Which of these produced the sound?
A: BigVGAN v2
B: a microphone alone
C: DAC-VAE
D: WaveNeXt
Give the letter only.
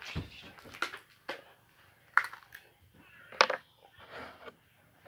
B